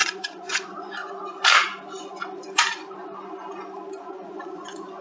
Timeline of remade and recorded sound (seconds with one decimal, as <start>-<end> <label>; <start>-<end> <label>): 0.0-1.0 remade; 1.0-4.0 recorded; 4.0-5.0 remade